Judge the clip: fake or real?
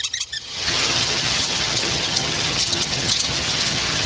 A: fake